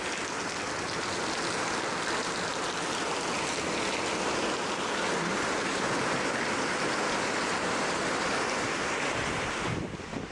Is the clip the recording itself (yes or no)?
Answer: yes